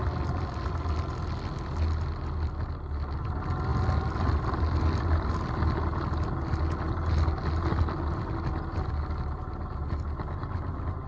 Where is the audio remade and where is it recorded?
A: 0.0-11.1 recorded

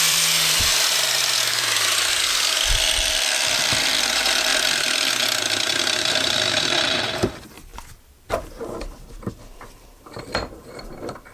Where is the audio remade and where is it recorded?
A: 0.0-4.5 remade; 4.5-6.0 recorded; 6.0-7.7 remade; 7.7-9.3 recorded; 9.3-11.3 remade

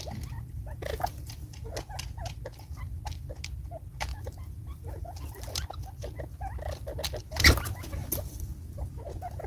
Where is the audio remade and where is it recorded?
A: 0.0-4.1 recorded; 4.1-5.0 remade; 5.0-8.0 recorded; 8.0-8.9 remade; 8.9-9.5 recorded

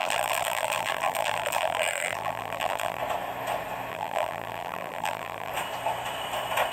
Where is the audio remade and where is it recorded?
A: 0.0-3.0 remade; 3.0-3.9 recorded; 3.9-5.5 remade; 5.5-6.7 recorded

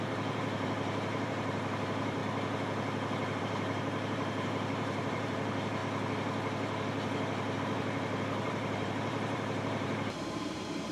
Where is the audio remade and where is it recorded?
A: 0.0-2.2 remade; 2.2-3.4 recorded; 3.4-5.8 remade; 5.8-7.6 recorded; 7.6-10.9 remade

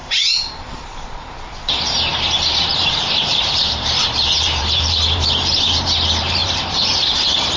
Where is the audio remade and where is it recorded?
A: 0.0-7.6 remade

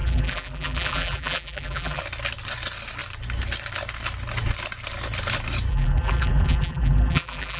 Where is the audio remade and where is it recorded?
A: 0.0-2.0 remade; 2.0-5.7 recorded; 5.7-7.6 remade